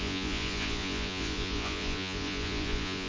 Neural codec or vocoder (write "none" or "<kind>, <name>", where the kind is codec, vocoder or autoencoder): vocoder, Vocos